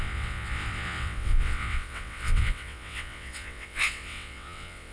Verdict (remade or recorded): remade